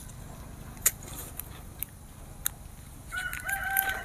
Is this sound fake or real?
real